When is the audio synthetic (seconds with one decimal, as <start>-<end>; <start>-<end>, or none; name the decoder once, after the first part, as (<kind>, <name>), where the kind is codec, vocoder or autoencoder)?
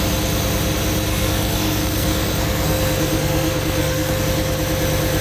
1.1-4.2 (codec, SNAC)